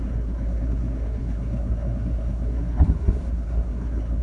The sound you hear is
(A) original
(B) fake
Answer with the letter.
B